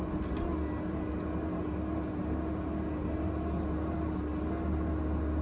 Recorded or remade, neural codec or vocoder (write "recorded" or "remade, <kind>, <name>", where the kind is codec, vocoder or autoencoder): recorded